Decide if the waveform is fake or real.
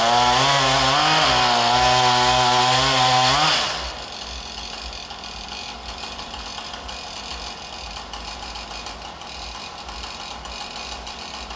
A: real